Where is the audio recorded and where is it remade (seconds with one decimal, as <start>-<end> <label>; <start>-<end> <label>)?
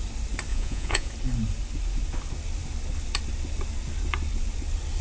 0.0-0.5 recorded; 0.5-1.1 remade; 1.1-5.0 recorded